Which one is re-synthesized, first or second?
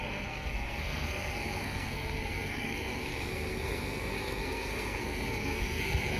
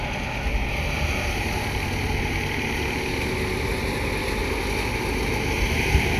first